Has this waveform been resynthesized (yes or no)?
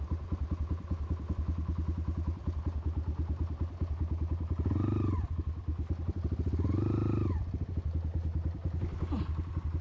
no